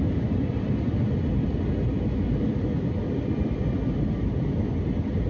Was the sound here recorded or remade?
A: recorded